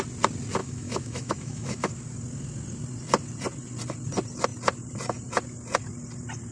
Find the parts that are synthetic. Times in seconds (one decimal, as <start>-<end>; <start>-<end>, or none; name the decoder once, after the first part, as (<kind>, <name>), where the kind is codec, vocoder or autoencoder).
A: 0.6-1.9 (autoencoder, DAC-VAE)